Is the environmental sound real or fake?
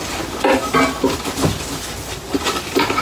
real